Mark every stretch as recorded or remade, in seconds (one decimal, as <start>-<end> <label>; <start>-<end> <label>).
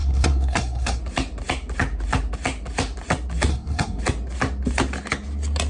0.0-1.0 remade; 1.0-3.5 recorded; 3.5-4.0 remade; 4.0-5.7 recorded